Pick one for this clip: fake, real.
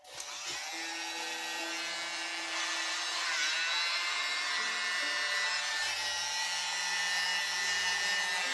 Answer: fake